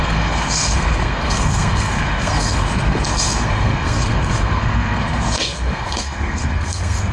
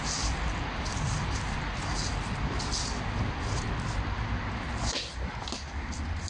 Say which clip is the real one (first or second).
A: second